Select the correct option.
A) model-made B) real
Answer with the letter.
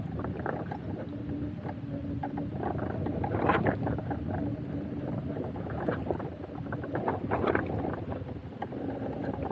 B